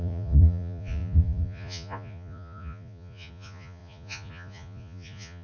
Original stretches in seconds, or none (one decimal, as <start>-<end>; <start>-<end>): none